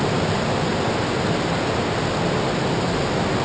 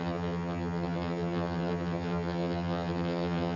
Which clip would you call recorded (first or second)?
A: first